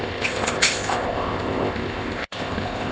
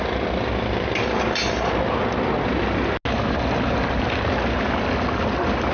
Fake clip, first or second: first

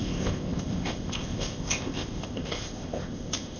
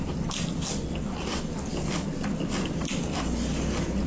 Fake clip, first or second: first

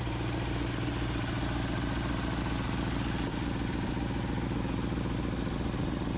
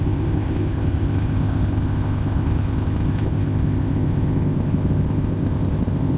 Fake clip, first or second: second